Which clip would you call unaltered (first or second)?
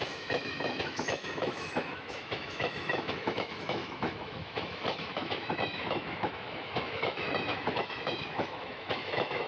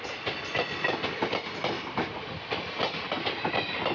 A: second